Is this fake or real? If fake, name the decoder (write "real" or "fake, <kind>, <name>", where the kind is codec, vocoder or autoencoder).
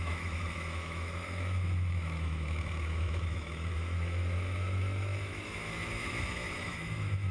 fake, autoencoder, DAC-VAE